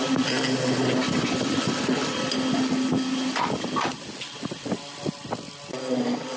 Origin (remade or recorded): recorded